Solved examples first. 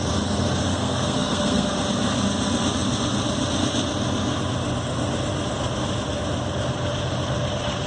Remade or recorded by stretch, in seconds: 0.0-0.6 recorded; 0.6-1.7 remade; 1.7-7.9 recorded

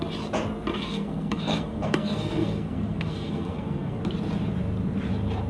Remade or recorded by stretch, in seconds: 0.0-0.7 recorded; 0.7-4.0 remade; 4.0-5.5 recorded

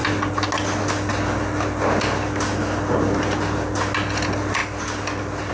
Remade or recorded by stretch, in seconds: 0.0-5.5 recorded